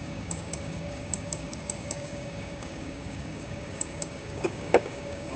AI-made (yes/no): yes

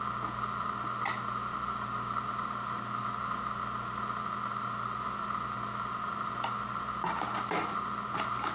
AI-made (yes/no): no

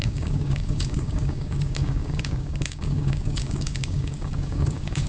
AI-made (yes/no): yes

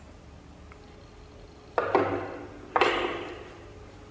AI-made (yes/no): no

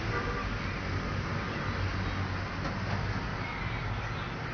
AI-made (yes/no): no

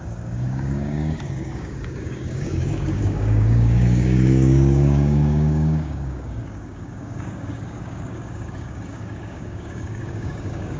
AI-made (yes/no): yes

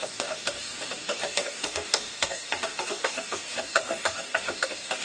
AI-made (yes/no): yes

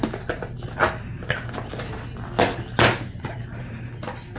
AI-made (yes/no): no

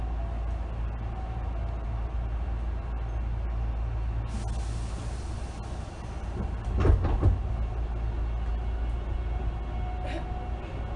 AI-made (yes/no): no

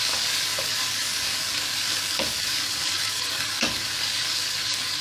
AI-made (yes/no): yes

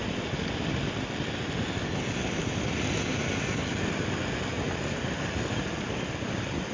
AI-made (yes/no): no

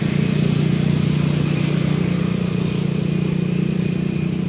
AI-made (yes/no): no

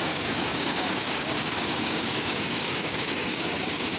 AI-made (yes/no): yes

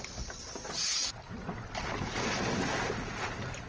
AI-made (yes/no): no